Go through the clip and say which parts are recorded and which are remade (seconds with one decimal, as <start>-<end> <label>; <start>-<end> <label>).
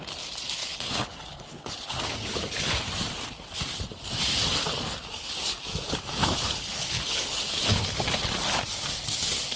0.0-0.6 recorded; 0.6-2.7 remade; 2.7-6.2 recorded; 6.2-7.8 remade; 7.8-9.6 recorded